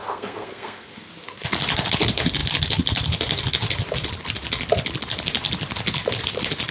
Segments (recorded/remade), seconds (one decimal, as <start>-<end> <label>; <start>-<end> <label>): 0.0-1.1 remade; 1.1-6.7 recorded